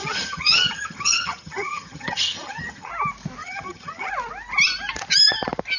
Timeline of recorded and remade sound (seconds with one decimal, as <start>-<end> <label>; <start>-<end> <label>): 0.0-2.9 remade; 2.9-3.4 recorded; 3.4-4.1 remade; 4.1-5.8 recorded